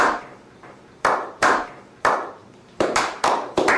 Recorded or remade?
remade